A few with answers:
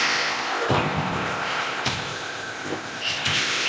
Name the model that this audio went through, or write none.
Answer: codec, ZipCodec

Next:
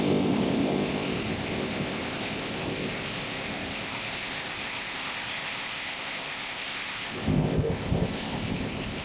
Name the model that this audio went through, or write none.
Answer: codec, ZipCodec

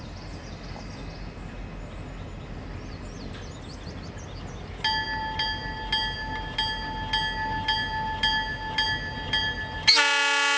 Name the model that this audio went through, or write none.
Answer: none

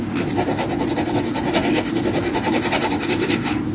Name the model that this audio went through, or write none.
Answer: none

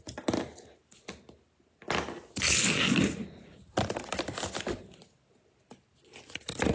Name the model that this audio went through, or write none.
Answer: none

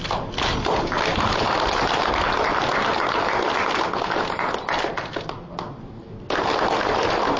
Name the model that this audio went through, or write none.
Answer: none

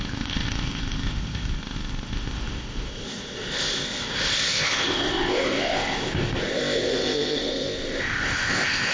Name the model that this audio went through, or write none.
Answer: codec, ZipCodec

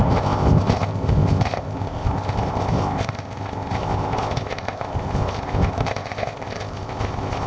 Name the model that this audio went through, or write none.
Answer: codec, ZipCodec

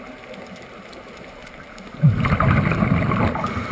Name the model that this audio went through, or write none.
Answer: none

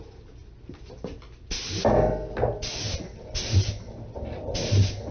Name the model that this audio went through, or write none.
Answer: none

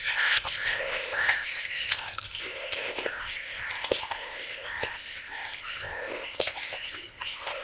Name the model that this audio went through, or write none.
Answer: codec, ZipCodec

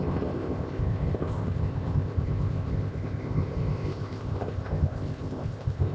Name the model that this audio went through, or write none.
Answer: codec, ZipCodec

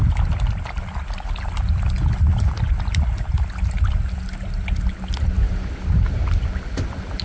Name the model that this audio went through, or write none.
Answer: none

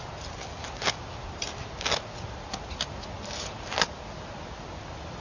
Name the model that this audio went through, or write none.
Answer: none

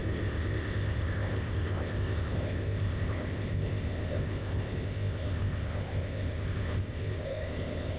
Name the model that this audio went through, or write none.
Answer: codec, ZipCodec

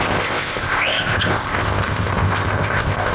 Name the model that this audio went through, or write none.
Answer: codec, ZipCodec